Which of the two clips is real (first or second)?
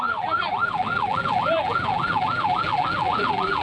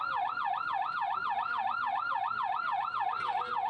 second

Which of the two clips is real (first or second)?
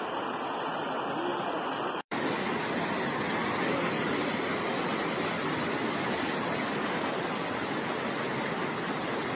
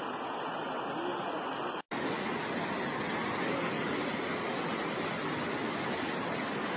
second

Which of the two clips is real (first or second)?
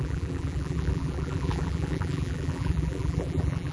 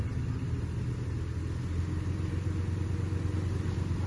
second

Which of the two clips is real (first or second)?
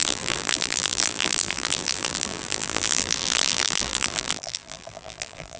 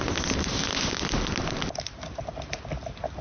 second